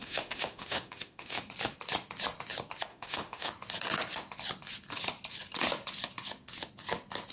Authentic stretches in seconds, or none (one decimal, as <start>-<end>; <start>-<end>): 1.4-2.9; 3.5-7.3